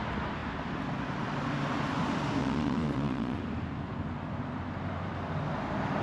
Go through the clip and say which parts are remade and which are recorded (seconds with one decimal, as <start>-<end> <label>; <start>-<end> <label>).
0.0-2.4 recorded; 2.4-3.4 remade; 3.4-6.0 recorded